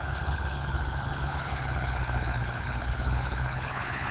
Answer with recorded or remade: remade